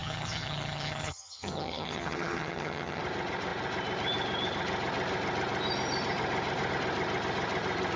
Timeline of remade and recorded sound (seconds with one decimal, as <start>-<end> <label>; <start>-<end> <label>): 0.0-3.0 remade; 3.0-8.0 recorded